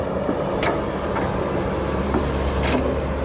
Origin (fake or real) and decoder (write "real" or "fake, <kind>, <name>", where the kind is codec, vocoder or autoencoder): real